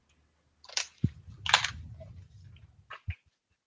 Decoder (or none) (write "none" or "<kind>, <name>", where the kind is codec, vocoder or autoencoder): none